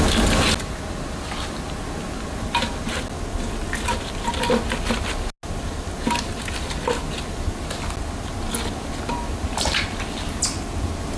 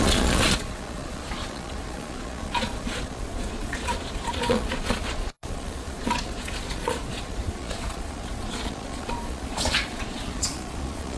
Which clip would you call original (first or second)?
first